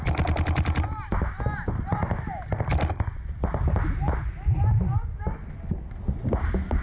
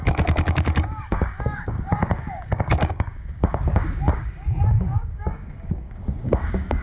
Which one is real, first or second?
first